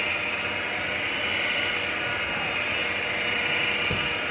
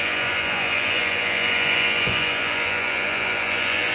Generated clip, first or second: second